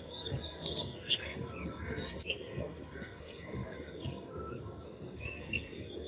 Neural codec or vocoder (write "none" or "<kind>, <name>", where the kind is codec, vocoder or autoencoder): codec, SNAC